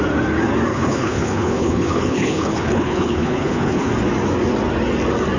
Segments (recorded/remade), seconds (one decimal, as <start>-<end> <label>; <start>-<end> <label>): 0.0-0.7 recorded; 0.7-3.9 remade; 3.9-5.4 recorded